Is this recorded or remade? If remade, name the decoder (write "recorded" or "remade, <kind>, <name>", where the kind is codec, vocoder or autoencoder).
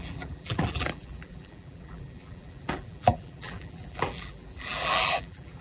remade, vocoder, BigVGAN v2